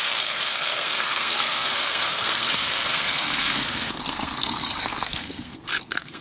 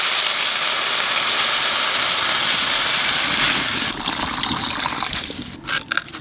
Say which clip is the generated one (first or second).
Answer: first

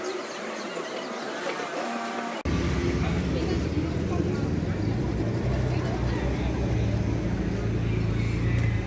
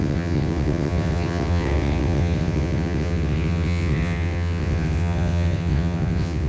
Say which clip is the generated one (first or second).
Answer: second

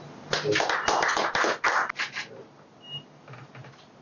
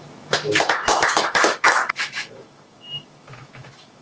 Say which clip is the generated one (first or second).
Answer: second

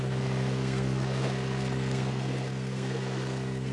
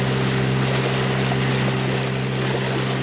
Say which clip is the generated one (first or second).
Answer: first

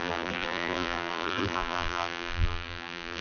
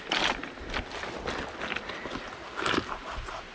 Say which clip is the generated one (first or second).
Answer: first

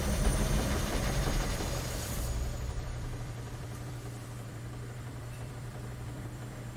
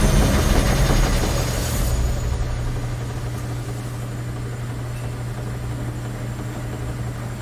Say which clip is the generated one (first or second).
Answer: first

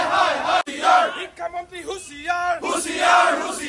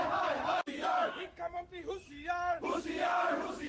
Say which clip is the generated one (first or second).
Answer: second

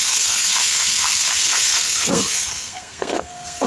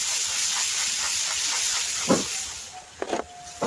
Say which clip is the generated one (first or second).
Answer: first